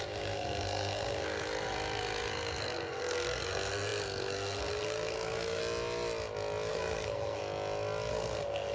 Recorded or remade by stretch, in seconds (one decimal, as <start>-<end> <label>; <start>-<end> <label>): 0.0-5.6 remade; 5.6-6.7 recorded; 6.7-7.4 remade; 7.4-8.1 recorded; 8.1-8.7 remade